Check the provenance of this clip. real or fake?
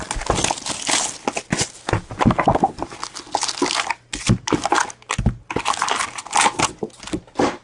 real